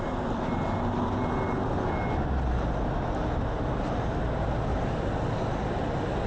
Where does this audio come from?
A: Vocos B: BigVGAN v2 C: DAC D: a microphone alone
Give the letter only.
D